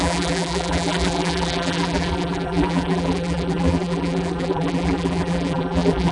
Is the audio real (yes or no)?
no